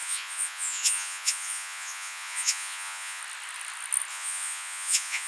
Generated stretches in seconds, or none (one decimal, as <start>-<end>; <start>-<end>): 0.0-3.2; 4.1-5.3